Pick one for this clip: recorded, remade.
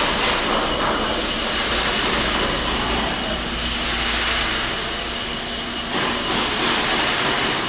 recorded